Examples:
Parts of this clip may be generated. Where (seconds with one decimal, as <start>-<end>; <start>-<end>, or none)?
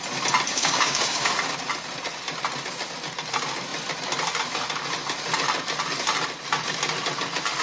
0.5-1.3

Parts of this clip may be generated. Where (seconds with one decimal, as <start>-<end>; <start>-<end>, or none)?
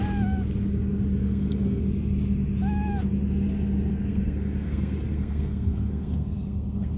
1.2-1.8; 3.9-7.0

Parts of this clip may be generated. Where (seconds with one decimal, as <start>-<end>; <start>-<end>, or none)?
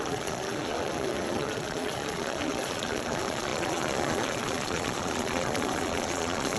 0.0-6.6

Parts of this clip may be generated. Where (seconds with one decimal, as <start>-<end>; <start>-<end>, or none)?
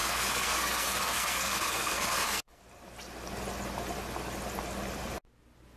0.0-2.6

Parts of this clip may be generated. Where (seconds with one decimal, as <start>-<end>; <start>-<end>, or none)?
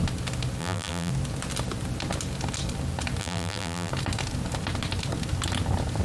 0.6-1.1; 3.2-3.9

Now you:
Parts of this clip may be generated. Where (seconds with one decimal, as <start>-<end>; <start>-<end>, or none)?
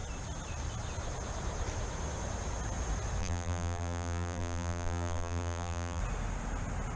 3.2-6.0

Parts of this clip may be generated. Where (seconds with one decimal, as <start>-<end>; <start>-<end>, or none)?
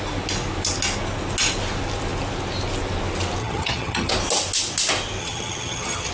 3.4-4.1; 5.2-6.1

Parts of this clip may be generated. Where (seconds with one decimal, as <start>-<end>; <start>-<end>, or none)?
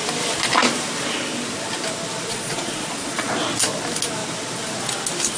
2.3-3.3